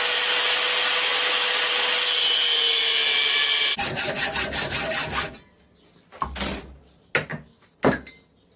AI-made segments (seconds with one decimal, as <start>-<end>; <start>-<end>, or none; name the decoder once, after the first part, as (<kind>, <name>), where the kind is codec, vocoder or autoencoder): none

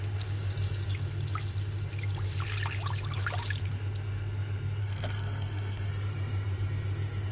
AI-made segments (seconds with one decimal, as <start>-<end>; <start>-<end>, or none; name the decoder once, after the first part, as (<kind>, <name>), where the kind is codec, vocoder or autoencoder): 4.8-5.9 (codec, SNAC)

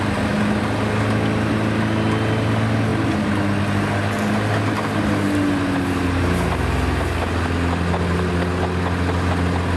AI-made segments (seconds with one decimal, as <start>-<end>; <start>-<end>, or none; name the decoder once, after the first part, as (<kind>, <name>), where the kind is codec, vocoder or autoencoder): none

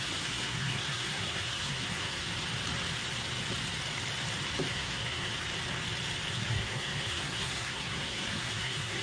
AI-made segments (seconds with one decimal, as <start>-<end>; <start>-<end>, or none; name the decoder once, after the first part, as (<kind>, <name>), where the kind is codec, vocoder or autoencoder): 0.0-2.3 (codec, SNAC); 4.7-5.3; 6.3-9.0

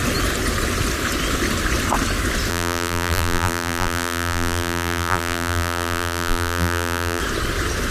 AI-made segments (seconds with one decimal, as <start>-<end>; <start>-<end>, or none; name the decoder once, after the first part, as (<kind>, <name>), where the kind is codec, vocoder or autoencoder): 2.5-7.2 (vocoder, BigVGAN v2)

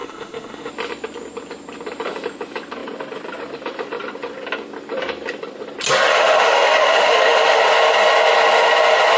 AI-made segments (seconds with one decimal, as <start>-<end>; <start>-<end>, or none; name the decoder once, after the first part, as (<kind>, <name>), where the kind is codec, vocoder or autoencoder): 0.0-0.7 (autoencoder, DAC-VAE); 6.1-7.6

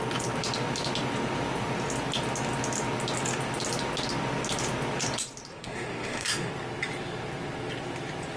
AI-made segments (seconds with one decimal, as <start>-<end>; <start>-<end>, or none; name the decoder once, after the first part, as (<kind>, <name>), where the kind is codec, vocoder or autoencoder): 5.5-6.5 (codec, SNAC)